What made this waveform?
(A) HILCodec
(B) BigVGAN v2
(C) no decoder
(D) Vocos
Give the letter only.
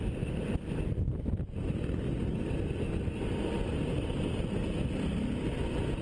C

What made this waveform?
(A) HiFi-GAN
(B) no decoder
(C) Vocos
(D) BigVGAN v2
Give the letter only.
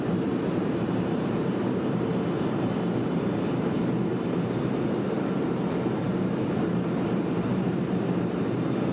D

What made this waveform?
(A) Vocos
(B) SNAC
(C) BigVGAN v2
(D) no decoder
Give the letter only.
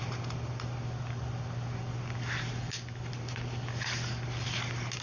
D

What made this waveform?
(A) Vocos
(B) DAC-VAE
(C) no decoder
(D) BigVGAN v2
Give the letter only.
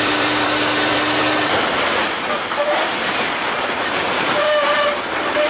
D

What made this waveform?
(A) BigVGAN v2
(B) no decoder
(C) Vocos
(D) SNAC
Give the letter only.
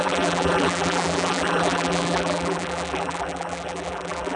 A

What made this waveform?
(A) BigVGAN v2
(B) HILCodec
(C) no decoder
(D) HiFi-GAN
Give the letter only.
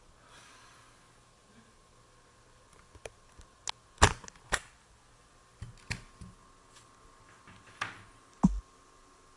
C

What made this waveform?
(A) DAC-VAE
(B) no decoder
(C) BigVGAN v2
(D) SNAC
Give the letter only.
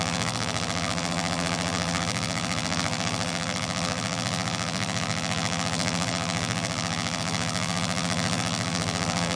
C